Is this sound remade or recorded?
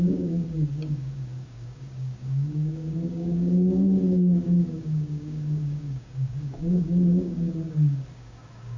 remade